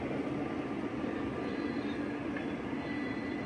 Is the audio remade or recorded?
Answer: recorded